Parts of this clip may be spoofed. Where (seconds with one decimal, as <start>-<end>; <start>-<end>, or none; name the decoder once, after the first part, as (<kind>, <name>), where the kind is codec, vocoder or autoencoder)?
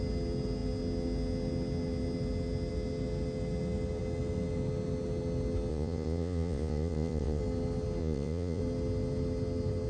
5.7-7.4 (vocoder, Vocos); 8.0-8.6